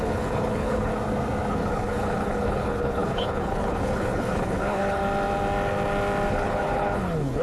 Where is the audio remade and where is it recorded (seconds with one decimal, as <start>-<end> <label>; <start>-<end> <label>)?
0.0-0.9 remade; 0.9-1.5 recorded; 1.5-5.0 remade; 5.0-6.3 recorded; 6.3-7.4 remade